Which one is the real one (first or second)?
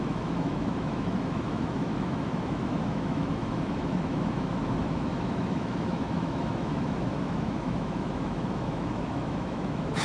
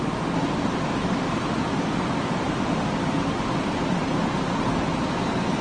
second